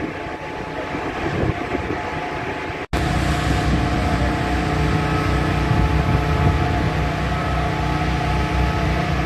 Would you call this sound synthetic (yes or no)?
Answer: no